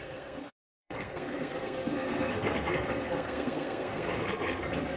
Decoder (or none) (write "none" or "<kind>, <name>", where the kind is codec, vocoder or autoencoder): codec, SNAC